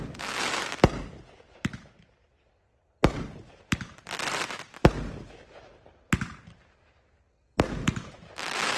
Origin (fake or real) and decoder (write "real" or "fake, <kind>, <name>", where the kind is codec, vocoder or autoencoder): real